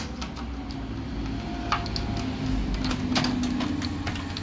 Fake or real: real